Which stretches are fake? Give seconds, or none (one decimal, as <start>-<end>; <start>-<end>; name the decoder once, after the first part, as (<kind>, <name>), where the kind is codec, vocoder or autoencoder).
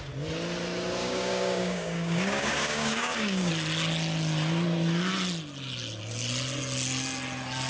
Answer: 1.0-3.5 (codec, DAC)